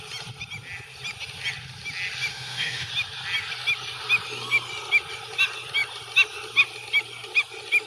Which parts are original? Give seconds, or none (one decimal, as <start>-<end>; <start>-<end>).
0.0-2.3; 2.9-7.9